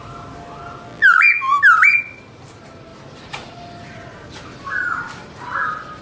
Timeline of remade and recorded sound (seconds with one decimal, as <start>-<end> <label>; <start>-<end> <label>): 0.0-0.9 recorded; 0.9-1.6 remade; 1.6-6.0 recorded